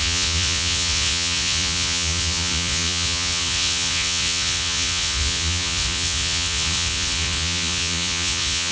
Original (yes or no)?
no